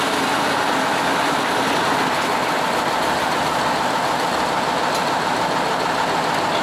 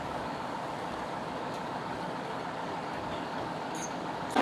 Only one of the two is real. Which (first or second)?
first